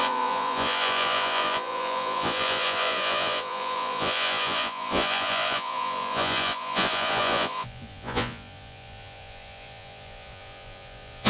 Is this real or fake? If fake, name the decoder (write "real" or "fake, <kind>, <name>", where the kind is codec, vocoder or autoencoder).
fake, vocoder, Vocos